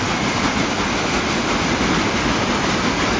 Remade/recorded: recorded